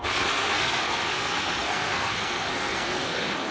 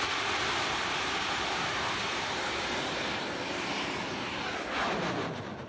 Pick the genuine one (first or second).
second